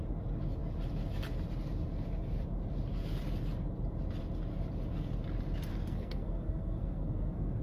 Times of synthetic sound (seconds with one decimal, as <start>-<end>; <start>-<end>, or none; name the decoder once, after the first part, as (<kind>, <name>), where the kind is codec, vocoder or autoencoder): 5.7-7.6 (codec, SNAC)